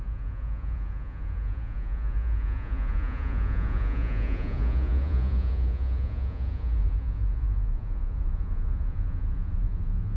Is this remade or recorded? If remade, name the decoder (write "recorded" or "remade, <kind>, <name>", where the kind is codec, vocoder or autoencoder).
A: remade, vocoder, Vocos